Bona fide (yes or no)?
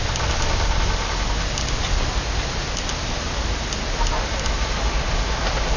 yes